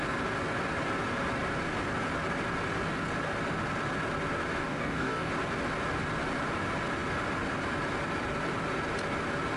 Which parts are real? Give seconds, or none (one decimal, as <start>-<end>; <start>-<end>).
0.0-4.6; 5.3-9.6